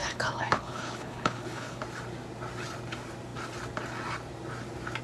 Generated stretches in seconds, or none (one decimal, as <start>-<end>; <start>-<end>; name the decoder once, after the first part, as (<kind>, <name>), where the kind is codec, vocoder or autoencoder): 0.0-1.8 (codec, HILCodec)